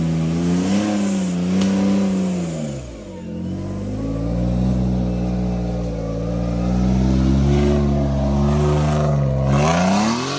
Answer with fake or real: real